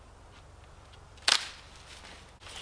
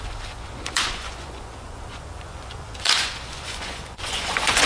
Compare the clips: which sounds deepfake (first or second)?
second